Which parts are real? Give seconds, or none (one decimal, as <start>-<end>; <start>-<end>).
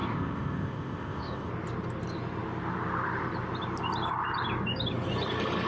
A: 1.5-5.7